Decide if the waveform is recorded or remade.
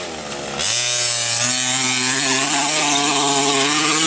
recorded